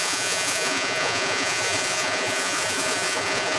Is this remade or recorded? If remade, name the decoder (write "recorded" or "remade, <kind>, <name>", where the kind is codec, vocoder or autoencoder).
remade, vocoder, Vocos